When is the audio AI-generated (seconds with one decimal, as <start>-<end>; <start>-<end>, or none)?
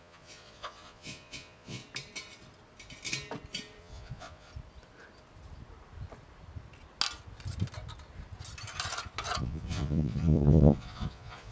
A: 0.0-1.8; 3.8-4.5; 9.4-11.5